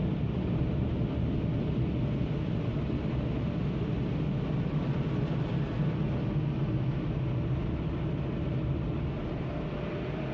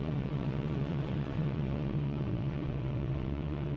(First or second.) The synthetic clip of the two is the second